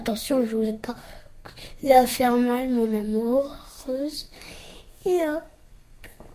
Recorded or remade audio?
remade